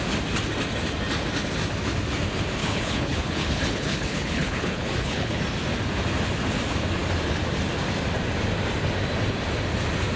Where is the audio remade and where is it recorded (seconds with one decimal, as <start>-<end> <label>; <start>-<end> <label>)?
0.0-2.6 recorded; 2.6-5.4 remade; 5.4-10.2 recorded